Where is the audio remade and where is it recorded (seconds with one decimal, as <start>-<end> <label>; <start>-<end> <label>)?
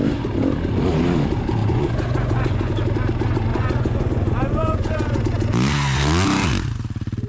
0.0-1.6 recorded; 1.6-2.7 remade; 2.7-3.5 recorded; 3.5-5.2 remade; 5.2-7.3 recorded